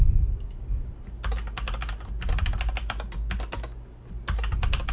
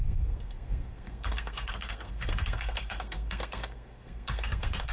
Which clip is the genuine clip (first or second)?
first